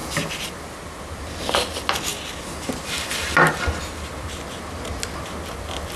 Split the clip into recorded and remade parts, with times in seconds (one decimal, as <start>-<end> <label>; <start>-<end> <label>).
0.0-0.5 remade; 0.5-2.1 recorded; 2.1-4.3 remade; 4.3-6.0 recorded